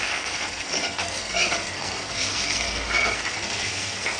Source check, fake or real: fake